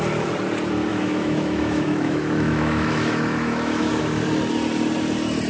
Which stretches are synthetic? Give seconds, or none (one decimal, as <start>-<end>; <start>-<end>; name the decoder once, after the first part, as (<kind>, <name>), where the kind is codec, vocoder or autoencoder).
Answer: 0.9-3.9 (autoencoder, DAC-VAE)